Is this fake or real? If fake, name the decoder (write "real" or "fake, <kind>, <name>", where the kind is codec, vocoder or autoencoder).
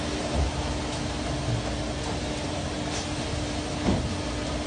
real